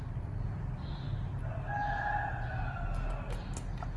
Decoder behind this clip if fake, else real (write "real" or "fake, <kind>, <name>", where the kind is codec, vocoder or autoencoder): real